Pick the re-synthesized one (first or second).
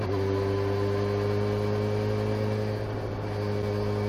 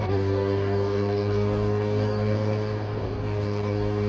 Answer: second